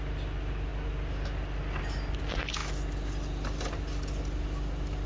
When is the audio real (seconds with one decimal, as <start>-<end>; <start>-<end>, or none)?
0.0-5.1